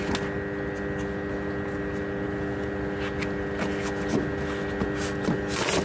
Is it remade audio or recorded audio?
recorded